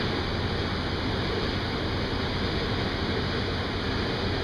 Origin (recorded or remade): recorded